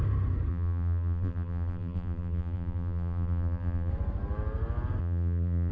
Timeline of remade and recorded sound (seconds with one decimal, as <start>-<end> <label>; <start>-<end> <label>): 0.0-0.5 recorded; 0.5-3.9 remade; 3.9-5.0 recorded; 5.0-5.7 remade